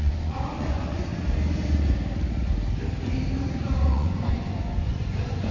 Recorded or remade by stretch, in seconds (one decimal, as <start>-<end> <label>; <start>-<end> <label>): 0.0-1.1 remade; 1.1-3.9 recorded; 3.9-5.5 remade